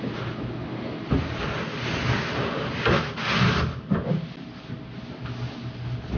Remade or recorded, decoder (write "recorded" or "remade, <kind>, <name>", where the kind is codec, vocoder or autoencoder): recorded